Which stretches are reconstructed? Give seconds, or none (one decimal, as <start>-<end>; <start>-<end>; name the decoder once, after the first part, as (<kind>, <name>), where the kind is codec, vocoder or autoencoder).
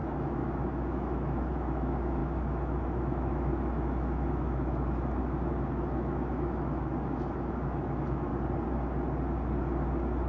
0.0-8.3 (autoencoder, DAC-VAE)